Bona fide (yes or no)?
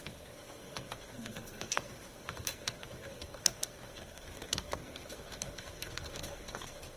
no